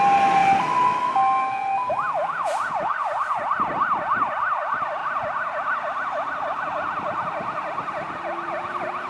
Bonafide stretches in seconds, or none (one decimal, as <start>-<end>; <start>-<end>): 0.0-9.1